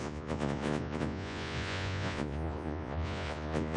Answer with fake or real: fake